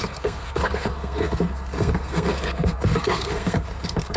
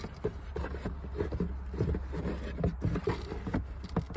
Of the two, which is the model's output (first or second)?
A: first